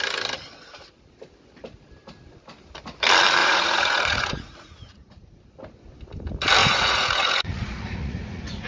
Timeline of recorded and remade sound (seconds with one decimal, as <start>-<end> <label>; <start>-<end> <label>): 0.0-3.4 recorded; 3.4-5.4 remade; 5.4-6.6 recorded; 6.6-8.7 remade